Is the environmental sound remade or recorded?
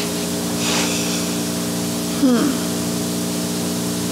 recorded